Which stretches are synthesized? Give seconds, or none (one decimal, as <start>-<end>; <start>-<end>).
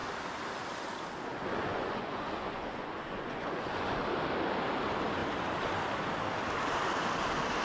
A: 1.3-4.0